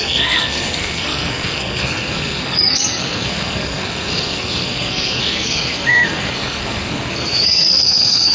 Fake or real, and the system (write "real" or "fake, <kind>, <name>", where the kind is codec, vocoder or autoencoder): fake, codec, SNAC